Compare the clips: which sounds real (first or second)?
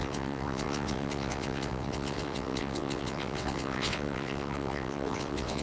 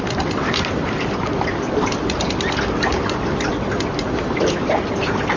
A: second